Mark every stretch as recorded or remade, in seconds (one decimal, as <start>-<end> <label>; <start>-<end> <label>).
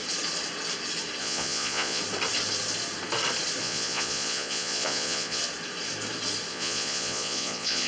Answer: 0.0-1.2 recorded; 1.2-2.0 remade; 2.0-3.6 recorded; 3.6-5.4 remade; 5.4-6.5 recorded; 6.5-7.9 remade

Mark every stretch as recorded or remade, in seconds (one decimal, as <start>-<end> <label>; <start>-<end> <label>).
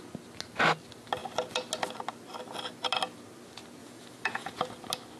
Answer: 0.0-3.8 recorded; 3.8-4.7 remade; 4.7-5.2 recorded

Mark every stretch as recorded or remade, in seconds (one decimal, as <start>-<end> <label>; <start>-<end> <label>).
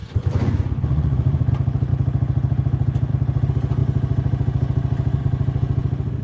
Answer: 0.0-1.5 remade; 1.5-6.2 recorded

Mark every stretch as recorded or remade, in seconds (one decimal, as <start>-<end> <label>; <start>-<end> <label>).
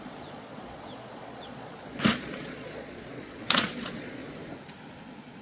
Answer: 0.0-4.2 remade; 4.2-5.0 recorded; 5.0-5.4 remade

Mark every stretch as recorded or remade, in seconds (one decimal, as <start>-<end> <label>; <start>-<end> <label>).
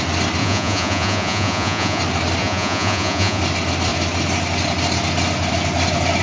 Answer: 0.0-0.4 recorded; 0.4-2.0 remade; 2.0-2.4 recorded; 2.4-3.4 remade; 3.4-6.2 recorded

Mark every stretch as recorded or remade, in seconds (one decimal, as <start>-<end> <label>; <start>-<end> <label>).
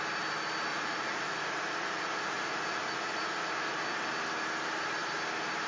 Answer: 0.0-0.7 recorded; 0.7-4.1 remade; 4.1-5.7 recorded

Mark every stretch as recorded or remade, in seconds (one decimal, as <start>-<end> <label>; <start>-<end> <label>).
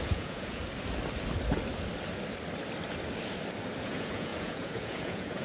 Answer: 0.0-0.6 remade; 0.6-3.8 recorded; 3.8-5.4 remade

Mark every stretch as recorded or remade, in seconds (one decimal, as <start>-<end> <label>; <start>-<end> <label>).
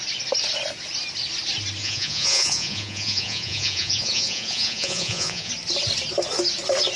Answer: 0.0-1.8 recorded; 1.8-5.5 remade; 5.5-7.0 recorded